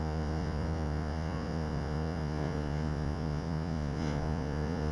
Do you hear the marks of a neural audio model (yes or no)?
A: yes